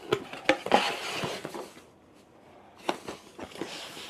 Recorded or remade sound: recorded